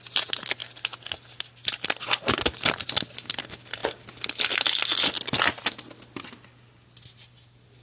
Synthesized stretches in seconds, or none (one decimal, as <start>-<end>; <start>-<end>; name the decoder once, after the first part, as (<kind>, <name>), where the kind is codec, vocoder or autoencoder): none